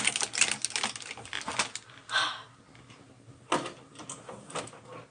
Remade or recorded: recorded